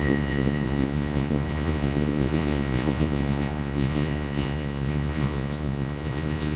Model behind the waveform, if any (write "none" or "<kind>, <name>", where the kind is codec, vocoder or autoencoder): vocoder, Vocos